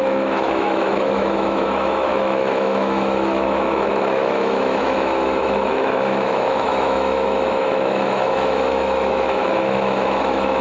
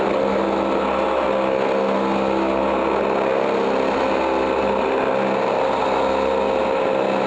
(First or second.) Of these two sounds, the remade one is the first